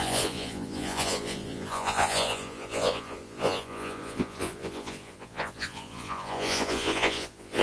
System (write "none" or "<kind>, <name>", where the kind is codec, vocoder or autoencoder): vocoder, Vocos